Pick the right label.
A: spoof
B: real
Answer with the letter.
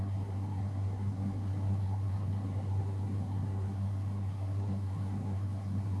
A